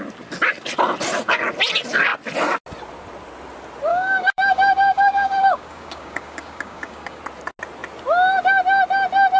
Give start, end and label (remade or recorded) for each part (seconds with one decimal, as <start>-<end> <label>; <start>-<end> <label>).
0.0-3.9 recorded; 3.9-7.2 remade; 7.2-9.4 recorded